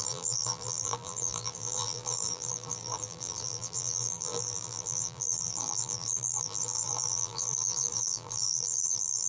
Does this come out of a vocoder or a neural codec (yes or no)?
yes